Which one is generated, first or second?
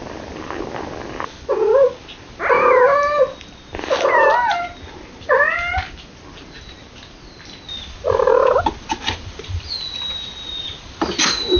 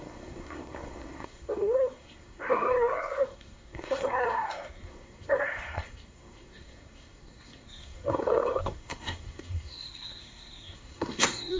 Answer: second